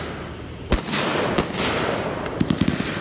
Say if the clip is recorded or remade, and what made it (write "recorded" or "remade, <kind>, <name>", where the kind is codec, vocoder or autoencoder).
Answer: recorded